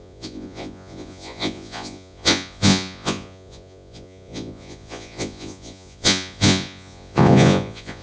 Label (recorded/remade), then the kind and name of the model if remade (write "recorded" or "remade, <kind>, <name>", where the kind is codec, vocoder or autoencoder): remade, vocoder, Vocos